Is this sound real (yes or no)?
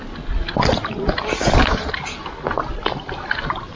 yes